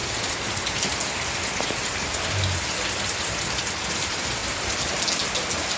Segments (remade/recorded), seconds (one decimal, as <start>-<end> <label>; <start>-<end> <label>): 0.0-5.8 recorded